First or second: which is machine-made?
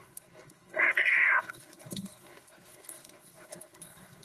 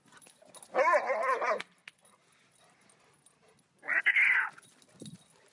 first